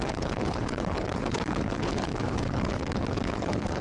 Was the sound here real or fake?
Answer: fake